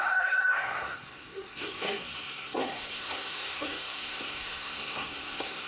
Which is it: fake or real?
fake